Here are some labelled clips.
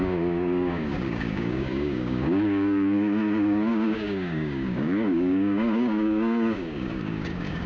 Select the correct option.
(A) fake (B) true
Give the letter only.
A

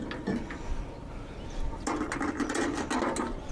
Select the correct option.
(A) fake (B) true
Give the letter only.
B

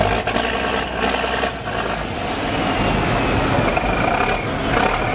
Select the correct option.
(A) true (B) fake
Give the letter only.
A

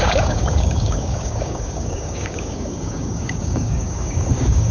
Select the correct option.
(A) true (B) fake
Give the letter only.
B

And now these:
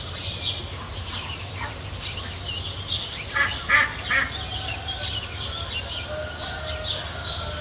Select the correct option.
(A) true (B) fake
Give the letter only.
A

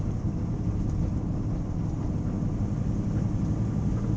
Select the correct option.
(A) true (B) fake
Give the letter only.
A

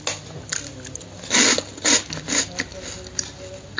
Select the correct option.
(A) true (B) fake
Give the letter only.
A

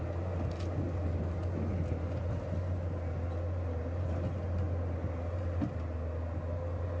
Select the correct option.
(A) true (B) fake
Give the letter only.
A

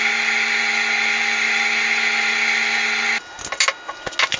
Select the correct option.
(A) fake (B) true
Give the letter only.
B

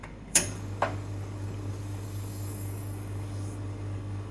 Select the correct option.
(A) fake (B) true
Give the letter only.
A